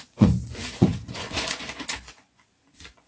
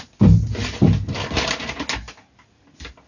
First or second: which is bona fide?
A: second